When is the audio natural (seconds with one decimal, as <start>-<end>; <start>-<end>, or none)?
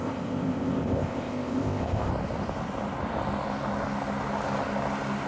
2.1-5.3